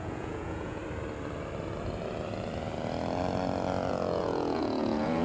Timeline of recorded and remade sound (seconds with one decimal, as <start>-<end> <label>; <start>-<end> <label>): 0.0-0.8 remade; 0.8-3.9 recorded; 3.9-5.2 remade